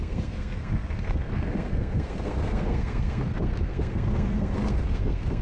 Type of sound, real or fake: fake